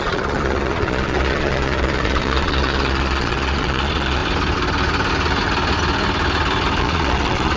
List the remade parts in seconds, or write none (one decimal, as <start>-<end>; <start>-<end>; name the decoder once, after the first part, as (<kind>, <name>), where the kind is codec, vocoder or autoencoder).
0.0-4.2 (vocoder, Vocos); 6.8-7.6